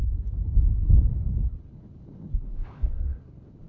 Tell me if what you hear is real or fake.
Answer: fake